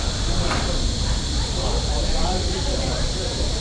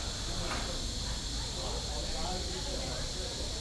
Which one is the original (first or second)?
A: second